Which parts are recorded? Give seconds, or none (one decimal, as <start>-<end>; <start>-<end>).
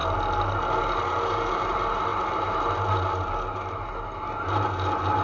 0.0-5.2